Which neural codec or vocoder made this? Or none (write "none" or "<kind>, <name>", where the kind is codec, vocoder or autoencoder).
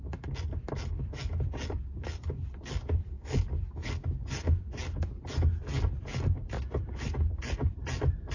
none